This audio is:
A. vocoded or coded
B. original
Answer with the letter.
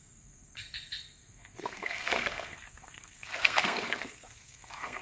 A